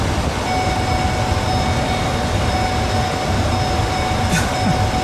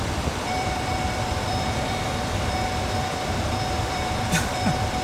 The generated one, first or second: second